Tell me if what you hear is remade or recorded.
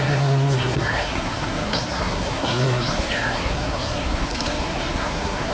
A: remade